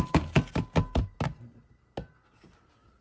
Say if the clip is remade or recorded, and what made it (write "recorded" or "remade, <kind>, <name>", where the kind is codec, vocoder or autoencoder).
recorded